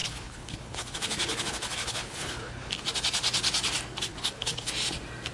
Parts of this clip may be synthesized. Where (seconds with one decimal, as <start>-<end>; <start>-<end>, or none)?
0.0-2.7; 4.1-4.7